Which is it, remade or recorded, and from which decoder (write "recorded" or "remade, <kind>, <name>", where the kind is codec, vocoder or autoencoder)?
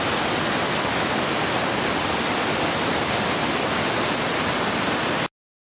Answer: recorded